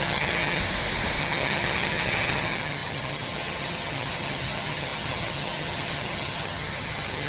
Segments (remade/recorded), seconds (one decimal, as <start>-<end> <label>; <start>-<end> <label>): 0.0-0.6 remade; 0.6-1.2 recorded; 1.2-7.3 remade